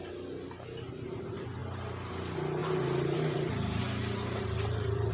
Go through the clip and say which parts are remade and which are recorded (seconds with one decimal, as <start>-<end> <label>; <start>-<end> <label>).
0.0-1.6 recorded; 1.6-2.1 remade; 2.1-2.6 recorded; 2.6-5.1 remade